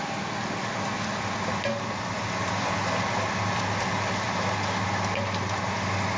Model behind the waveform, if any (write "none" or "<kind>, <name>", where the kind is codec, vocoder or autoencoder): none